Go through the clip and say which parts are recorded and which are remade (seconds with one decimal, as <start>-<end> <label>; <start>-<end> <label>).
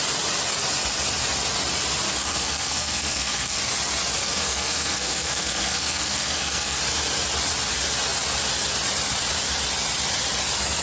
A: 0.0-2.2 recorded; 2.2-3.6 remade; 3.6-4.2 recorded; 4.2-6.8 remade; 6.8-10.8 recorded